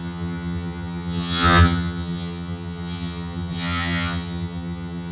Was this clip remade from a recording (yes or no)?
yes